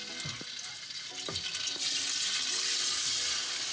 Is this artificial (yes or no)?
no